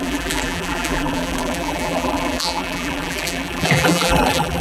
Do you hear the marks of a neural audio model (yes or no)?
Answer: yes